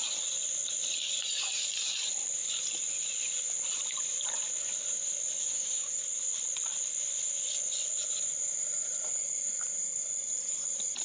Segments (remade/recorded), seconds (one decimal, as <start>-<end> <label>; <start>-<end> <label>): 0.0-5.4 recorded; 5.4-6.0 remade; 6.0-11.0 recorded